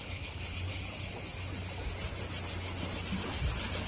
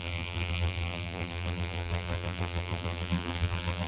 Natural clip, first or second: first